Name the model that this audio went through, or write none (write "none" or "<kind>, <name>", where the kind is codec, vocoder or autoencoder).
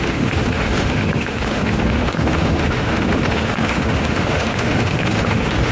autoencoder, DAC-VAE